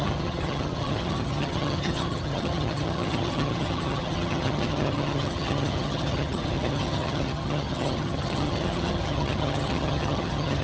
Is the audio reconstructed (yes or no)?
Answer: yes